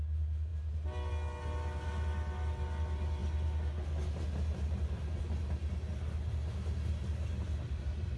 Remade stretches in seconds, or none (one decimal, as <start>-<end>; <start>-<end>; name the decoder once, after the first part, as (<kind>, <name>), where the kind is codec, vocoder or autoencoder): none